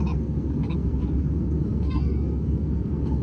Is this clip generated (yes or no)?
yes